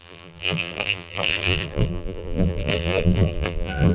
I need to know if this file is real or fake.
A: fake